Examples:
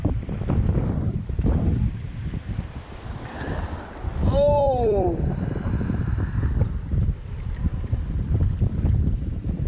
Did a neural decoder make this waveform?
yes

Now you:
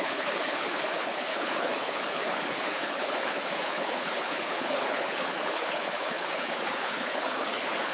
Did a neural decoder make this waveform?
yes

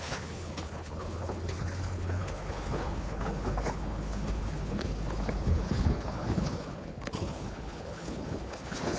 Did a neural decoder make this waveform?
yes